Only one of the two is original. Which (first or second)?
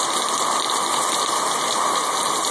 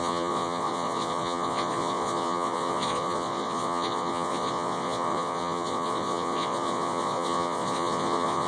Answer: first